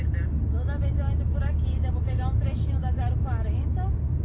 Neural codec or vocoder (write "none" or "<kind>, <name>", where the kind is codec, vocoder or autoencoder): none